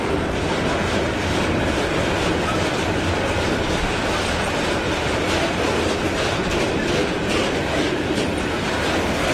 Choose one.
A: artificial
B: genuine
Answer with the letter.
B